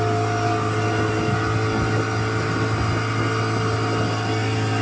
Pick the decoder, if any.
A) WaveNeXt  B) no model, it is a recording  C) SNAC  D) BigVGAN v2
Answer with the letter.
B